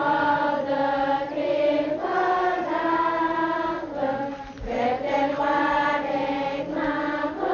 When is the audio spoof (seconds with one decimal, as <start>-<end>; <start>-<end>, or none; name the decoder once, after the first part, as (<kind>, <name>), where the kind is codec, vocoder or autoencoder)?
none